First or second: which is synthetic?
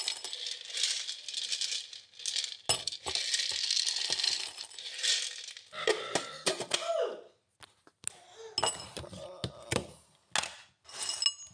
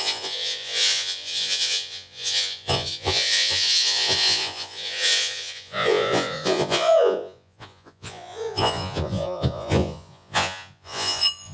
second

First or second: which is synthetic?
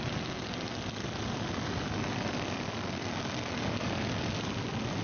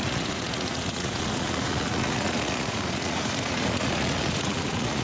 second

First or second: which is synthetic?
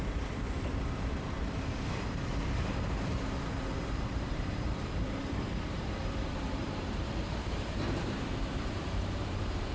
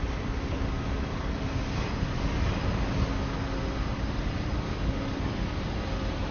first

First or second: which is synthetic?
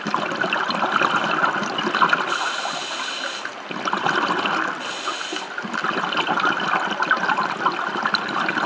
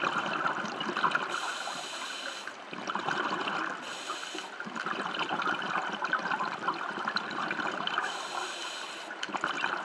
second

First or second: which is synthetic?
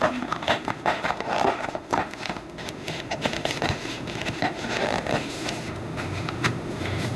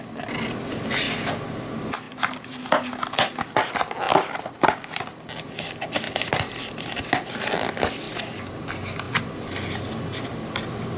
first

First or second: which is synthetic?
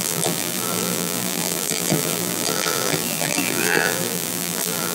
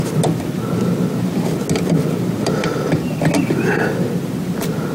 first